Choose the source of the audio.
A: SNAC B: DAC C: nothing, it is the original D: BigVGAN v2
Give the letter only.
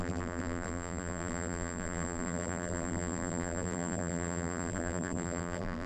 D